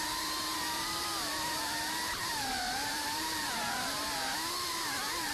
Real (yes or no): no